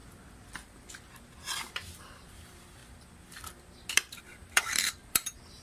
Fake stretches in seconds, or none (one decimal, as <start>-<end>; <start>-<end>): 1.7-2.8; 4.2-5.6